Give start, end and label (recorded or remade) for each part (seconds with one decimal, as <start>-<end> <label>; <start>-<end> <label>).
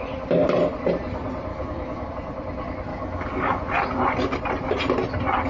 0.0-1.5 recorded; 1.5-2.1 remade; 2.1-2.9 recorded; 2.9-3.6 remade; 3.6-5.5 recorded